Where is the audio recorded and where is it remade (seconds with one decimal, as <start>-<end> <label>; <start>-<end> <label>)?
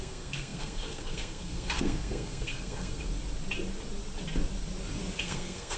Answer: 0.0-3.1 remade; 3.1-5.2 recorded; 5.2-5.8 remade